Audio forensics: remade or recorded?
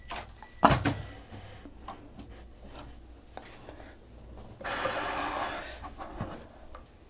recorded